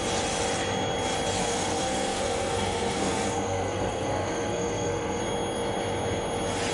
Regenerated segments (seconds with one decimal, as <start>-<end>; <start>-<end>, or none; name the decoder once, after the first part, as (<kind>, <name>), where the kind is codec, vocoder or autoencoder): 1.4-5.2 (codec, SNAC)